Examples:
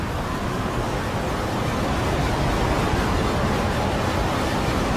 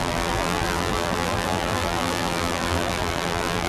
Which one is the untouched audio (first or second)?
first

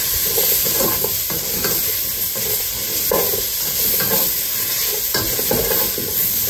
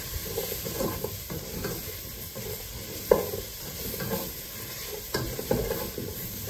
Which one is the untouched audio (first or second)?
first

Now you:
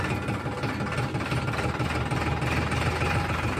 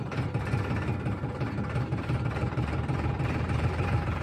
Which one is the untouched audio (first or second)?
first